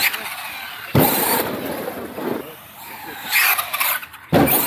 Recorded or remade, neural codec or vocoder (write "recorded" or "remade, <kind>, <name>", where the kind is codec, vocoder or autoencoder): recorded